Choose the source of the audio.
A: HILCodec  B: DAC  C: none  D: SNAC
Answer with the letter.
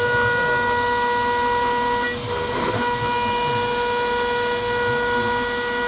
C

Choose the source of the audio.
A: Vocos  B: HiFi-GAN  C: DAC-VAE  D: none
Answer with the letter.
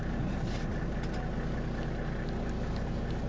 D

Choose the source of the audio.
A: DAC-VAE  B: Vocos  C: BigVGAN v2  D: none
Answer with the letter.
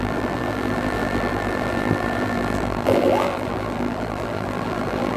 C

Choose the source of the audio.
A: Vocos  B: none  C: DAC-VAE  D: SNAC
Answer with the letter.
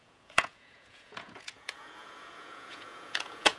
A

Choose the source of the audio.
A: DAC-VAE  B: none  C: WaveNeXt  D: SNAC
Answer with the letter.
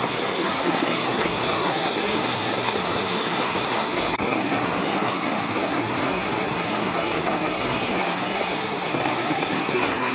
D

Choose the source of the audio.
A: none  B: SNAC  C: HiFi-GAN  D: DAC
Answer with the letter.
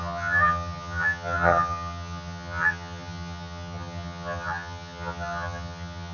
C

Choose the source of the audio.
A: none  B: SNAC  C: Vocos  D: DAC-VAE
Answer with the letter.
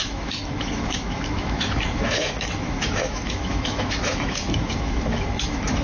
D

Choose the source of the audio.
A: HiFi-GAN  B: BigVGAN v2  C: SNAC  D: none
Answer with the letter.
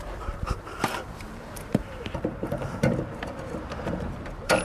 B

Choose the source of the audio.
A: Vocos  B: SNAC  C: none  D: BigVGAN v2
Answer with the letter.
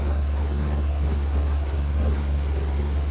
B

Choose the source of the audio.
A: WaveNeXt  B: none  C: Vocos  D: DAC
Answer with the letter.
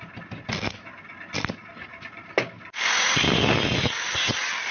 B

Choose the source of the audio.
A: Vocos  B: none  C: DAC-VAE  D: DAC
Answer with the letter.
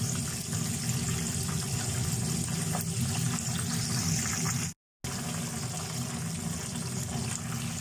B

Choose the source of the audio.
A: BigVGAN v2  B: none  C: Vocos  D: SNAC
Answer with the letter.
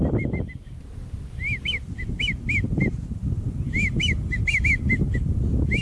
B